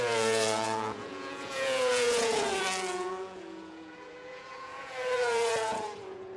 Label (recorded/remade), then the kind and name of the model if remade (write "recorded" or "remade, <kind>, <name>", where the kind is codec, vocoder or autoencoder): remade, vocoder, Vocos